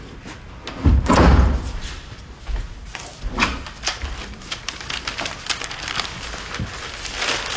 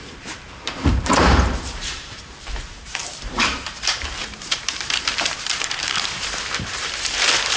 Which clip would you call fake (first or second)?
second